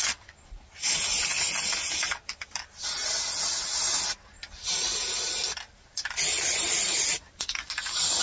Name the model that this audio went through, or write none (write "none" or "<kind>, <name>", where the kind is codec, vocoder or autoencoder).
none